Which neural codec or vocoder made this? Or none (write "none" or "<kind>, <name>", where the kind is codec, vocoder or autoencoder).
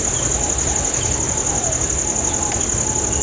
none